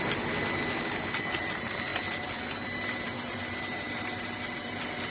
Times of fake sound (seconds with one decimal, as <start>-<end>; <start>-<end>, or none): none